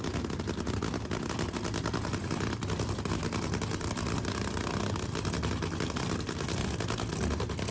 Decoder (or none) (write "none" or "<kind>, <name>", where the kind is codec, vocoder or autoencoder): none